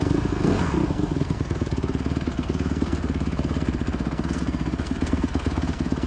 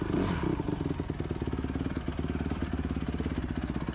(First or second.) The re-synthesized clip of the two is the first